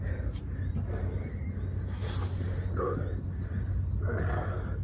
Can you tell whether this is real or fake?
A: real